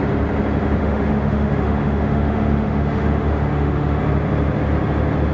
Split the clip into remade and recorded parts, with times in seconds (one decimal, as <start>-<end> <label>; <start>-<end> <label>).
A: 0.0-0.8 recorded; 0.8-4.0 remade; 4.0-5.3 recorded